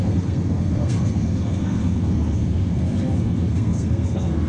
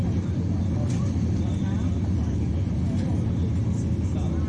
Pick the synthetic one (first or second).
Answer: first